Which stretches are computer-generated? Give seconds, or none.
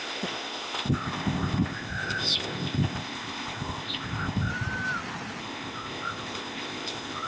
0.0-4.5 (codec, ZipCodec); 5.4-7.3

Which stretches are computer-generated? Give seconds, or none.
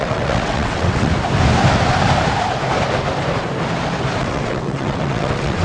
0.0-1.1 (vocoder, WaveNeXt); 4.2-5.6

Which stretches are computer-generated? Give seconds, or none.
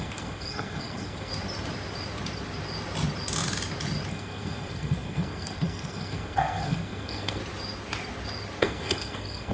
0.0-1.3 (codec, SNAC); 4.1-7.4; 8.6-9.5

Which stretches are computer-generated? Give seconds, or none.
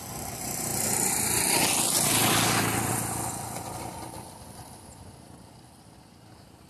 none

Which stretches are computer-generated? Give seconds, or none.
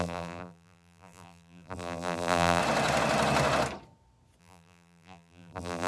0.0-2.6 (vocoder, BigVGAN v2); 4.4-5.9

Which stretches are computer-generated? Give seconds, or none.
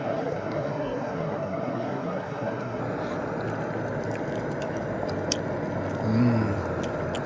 0.0-2.8 (codec, SNAC)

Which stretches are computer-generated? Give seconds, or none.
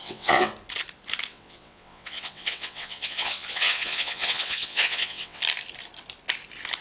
0.0-0.5 (vocoder, WaveNeXt); 1.3-5.4